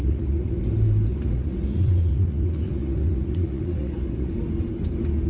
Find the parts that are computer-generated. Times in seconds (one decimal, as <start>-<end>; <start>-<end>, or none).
0.0-0.5; 1.1-4.3